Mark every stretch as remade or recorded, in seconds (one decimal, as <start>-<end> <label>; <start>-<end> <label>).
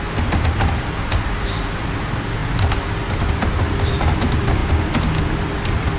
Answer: 0.0-6.0 recorded